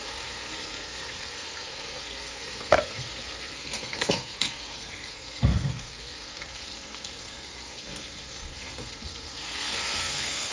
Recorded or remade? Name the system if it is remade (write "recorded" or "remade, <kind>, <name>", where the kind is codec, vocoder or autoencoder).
remade, codec, SNAC